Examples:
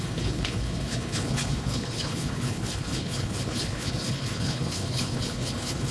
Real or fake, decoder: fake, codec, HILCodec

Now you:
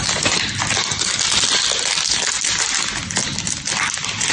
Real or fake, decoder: real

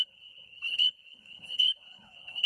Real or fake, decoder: fake, codec, HILCodec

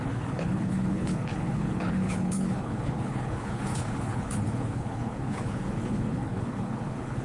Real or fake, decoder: fake, codec, HILCodec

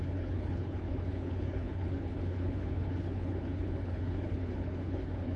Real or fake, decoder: fake, codec, HILCodec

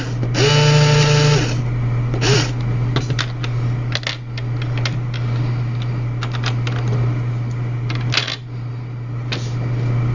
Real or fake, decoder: real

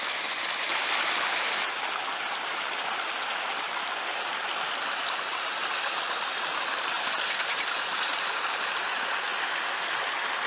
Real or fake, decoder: real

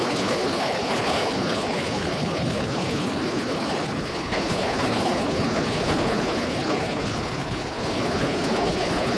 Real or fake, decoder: fake, codec, HILCodec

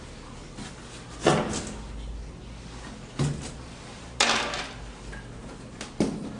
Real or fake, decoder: real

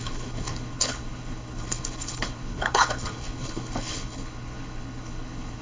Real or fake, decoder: fake, codec, HILCodec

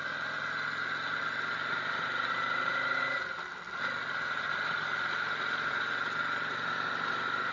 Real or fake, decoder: real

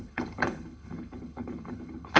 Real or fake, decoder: fake, codec, HILCodec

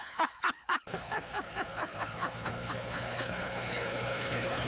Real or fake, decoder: fake, codec, HILCodec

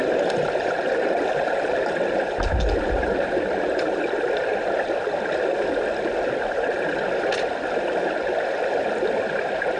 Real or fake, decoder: real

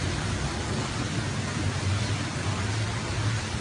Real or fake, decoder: real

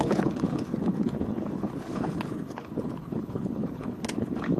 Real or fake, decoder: fake, codec, HILCodec